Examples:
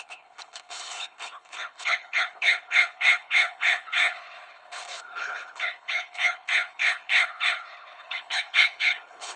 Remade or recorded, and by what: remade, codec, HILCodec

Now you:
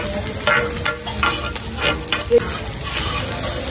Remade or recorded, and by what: recorded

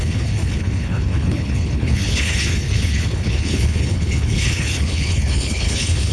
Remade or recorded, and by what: remade, codec, HILCodec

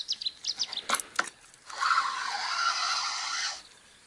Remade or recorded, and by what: recorded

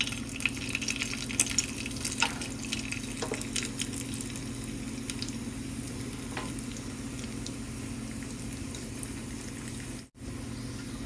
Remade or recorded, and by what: recorded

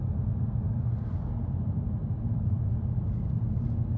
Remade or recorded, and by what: recorded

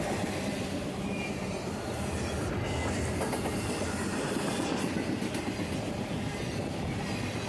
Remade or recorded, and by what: recorded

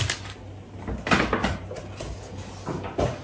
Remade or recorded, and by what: recorded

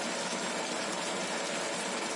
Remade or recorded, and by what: recorded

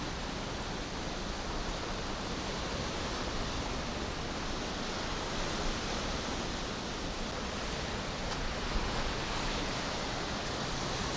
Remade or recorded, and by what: recorded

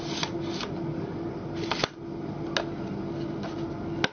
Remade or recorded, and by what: recorded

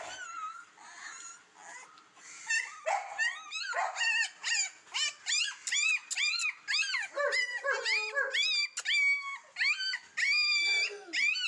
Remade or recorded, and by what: recorded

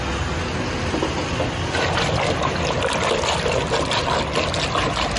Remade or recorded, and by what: recorded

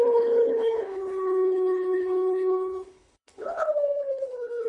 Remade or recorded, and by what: remade, codec, HILCodec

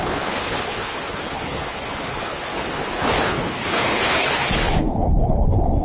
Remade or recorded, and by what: remade, codec, HILCodec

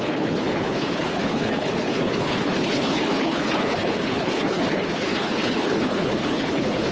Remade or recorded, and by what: remade, codec, HILCodec